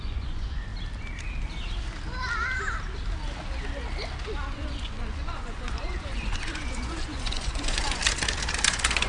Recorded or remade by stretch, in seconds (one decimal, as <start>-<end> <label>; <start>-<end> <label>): 0.0-0.7 remade; 0.7-4.5 recorded; 4.5-8.0 remade; 8.0-8.7 recorded; 8.7-9.1 remade